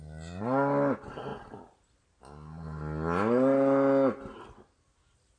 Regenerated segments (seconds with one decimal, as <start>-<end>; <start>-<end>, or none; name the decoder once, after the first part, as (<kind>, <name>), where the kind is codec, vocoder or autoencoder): none